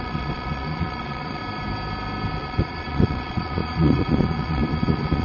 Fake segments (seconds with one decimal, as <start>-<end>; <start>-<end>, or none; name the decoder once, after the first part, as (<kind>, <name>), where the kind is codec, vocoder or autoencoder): 0.0-1.4 (vocoder, Vocos); 2.4-5.2